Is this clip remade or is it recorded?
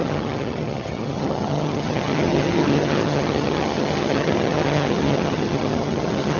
remade